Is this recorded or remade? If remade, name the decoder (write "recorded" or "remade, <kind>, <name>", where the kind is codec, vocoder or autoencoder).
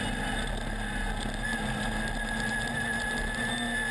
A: recorded